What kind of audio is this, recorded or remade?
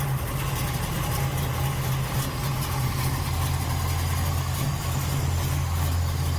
recorded